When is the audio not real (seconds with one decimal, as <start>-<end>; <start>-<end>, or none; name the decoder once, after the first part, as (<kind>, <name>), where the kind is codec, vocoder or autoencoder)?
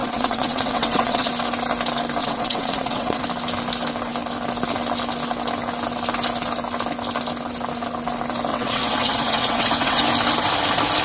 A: 0.0-1.3 (vocoder, WaveNeXt); 2.2-3.2; 8.5-10.0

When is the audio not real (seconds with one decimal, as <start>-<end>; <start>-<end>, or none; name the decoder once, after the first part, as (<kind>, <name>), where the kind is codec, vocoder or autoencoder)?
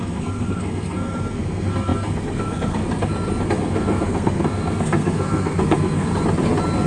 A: 0.0-2.8 (codec, SNAC); 3.5-6.1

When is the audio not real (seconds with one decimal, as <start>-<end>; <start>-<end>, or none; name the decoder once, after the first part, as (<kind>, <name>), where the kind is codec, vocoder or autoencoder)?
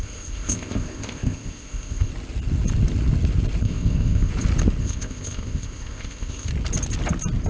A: 0.0-2.1 (codec, ZipCodec); 3.6-4.3; 4.8-6.5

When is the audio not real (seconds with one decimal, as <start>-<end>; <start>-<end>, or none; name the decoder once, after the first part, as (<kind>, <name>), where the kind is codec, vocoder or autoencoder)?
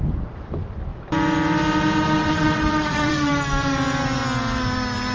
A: 2.2-3.3 (vocoder, WaveNeXt)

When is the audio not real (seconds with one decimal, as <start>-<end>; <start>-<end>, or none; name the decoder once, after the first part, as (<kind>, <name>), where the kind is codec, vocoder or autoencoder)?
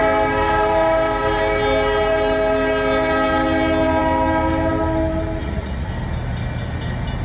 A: 5.4-5.9 (vocoder, Vocos)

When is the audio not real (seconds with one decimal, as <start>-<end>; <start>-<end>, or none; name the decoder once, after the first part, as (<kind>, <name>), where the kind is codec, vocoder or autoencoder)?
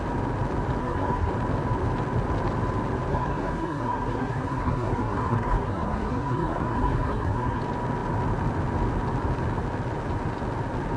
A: 0.8-1.3 (codec, SNAC); 3.1-7.6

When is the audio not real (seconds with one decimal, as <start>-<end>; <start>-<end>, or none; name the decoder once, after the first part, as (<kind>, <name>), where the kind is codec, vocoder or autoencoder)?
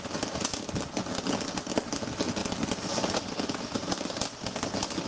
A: none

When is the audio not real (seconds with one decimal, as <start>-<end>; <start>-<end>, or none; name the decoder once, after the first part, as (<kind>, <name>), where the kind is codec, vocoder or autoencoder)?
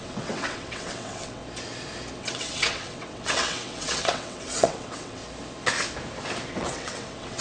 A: 0.0-1.4 (vocoder, WaveNeXt); 2.2-5.2; 6.5-7.4